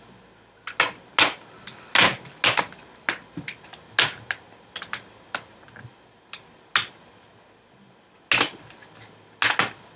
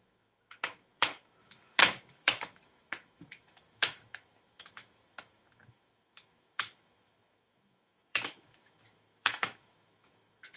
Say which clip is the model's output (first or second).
second